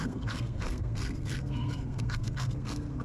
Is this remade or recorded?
remade